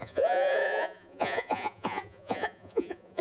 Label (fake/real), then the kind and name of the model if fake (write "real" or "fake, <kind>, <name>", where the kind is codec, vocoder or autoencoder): fake, vocoder, Vocos